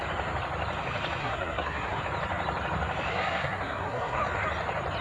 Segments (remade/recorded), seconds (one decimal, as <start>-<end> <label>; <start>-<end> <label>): 0.0-1.2 recorded; 1.2-2.0 remade; 2.0-3.1 recorded; 3.1-4.2 remade; 4.2-5.0 recorded